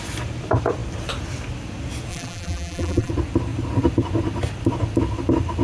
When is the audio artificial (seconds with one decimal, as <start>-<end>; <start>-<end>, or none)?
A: 2.1-3.1